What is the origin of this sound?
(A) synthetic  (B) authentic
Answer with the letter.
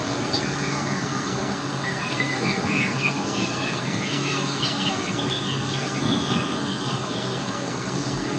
A